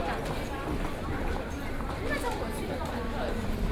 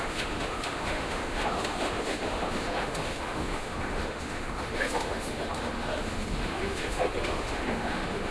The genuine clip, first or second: first